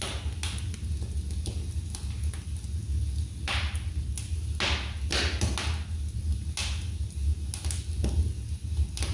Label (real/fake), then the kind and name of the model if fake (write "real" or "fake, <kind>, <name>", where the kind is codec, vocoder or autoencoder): real